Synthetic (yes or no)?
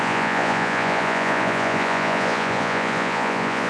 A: yes